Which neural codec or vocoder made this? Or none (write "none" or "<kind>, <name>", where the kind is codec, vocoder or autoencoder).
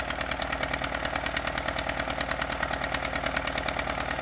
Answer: none